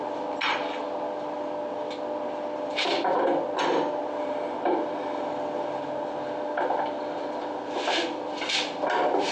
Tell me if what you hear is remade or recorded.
recorded